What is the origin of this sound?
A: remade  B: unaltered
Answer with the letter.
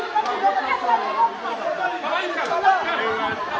B